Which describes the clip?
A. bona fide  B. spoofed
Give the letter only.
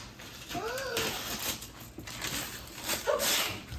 A